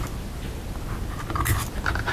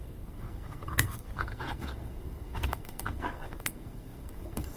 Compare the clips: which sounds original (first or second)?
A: first